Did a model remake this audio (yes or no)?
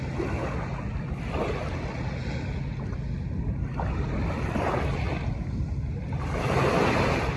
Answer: no